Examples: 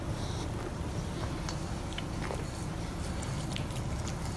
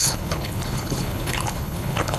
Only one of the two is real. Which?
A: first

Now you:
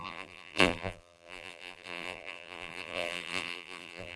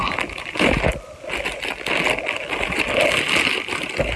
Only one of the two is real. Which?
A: second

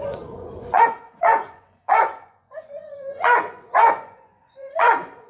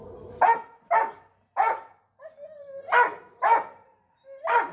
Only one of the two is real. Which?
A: second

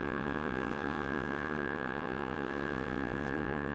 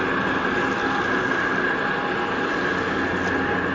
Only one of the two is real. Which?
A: second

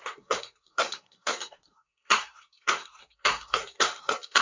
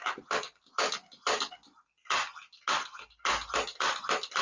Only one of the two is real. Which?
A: second